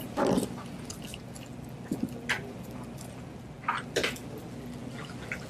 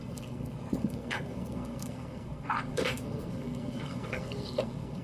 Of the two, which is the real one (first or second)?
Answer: first